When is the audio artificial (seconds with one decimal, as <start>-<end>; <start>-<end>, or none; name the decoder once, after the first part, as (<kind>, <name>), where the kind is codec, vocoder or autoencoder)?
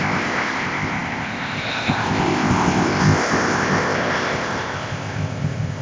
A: 0.0-5.8 (codec, ZipCodec)